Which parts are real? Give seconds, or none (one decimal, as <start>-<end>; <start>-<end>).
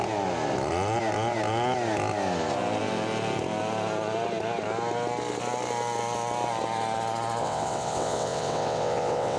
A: 0.0-7.4